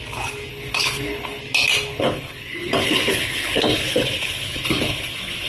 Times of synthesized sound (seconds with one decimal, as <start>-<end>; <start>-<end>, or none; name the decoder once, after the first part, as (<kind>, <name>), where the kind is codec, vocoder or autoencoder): 0.5-1.4 (codec, HILCodec); 1.9-5.5